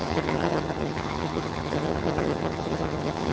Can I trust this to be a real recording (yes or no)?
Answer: no